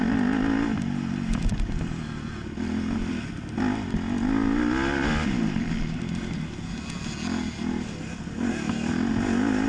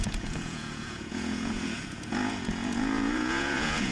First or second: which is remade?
second